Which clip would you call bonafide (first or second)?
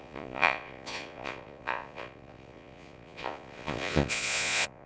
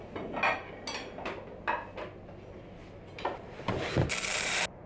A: second